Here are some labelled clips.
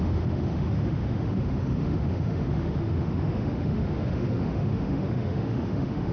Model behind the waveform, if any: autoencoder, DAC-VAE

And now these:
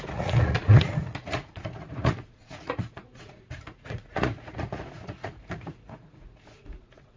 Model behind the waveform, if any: vocoder, Vocos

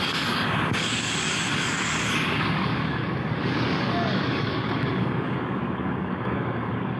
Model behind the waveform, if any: codec, DAC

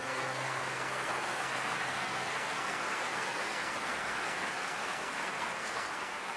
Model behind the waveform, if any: codec, SNAC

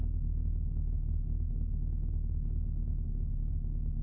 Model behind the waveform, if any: none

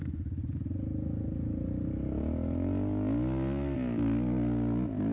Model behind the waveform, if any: none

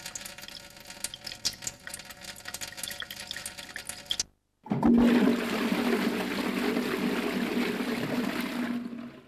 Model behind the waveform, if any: none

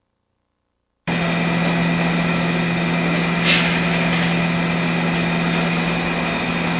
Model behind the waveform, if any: none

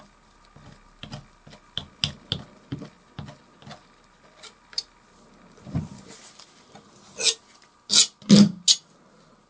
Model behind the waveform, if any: none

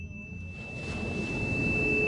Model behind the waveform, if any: none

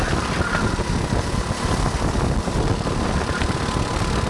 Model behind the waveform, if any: none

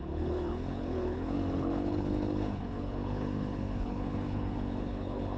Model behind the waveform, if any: codec, HILCodec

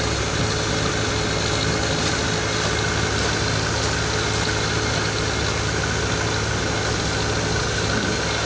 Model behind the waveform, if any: none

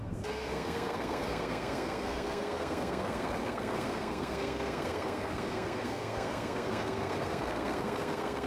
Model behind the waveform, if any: codec, SNAC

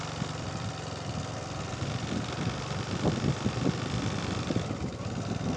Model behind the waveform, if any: none